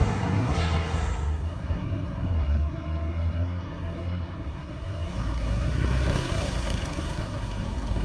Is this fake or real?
fake